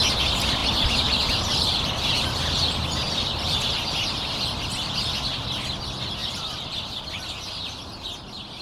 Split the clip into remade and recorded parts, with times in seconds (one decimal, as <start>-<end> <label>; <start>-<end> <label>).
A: 0.0-0.6 recorded; 0.6-2.1 remade; 2.1-3.0 recorded; 3.0-3.7 remade; 3.7-6.2 recorded; 6.2-7.0 remade; 7.0-8.6 recorded